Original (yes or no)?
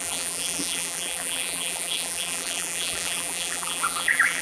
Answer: no